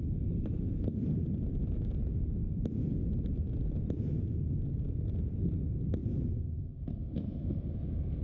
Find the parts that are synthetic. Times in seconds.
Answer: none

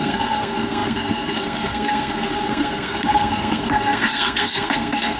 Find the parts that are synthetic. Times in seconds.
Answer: 0.0-5.2 (codec, SNAC)